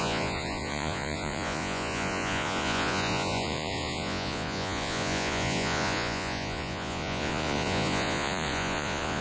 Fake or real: fake